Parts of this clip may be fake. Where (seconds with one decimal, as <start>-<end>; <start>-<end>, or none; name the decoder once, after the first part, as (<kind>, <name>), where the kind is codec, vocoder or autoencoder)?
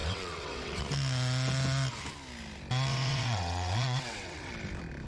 0.0-0.8 (vocoder, WaveNeXt); 2.9-4.5